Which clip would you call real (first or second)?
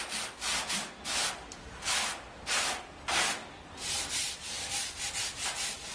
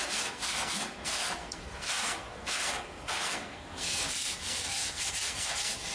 first